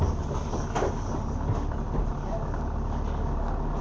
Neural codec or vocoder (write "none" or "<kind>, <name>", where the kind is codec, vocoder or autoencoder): none